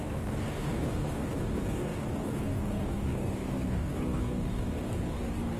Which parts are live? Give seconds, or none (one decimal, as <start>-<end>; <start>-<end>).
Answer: none